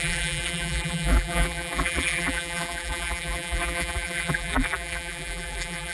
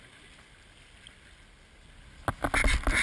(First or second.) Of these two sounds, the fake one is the first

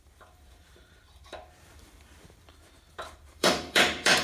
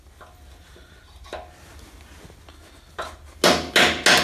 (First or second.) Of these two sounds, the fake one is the first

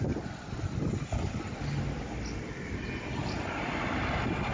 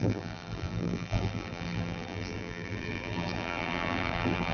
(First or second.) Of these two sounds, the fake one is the second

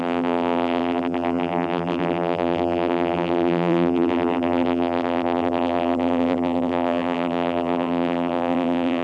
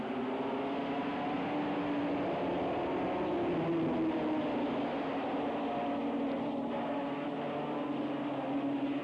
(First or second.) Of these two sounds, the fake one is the first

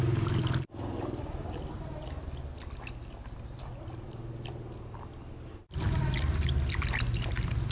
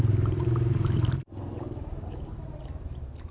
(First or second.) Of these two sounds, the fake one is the second